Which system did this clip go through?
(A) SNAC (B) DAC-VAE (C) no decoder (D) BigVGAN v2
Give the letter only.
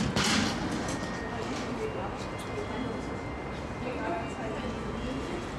C